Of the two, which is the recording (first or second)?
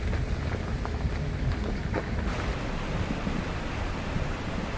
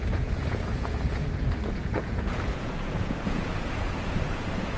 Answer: first